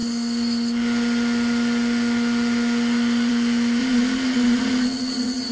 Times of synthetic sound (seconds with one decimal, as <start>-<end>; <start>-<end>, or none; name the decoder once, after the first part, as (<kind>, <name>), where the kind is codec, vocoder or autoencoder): 3.8-5.5 (vocoder, Vocos)